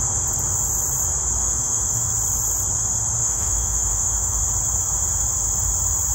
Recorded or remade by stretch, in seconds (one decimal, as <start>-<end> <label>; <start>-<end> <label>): 0.0-1.4 recorded; 1.4-2.1 remade; 2.1-3.2 recorded; 3.2-4.4 remade; 4.4-6.1 recorded